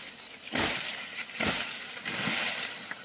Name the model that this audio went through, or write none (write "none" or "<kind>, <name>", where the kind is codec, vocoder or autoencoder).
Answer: none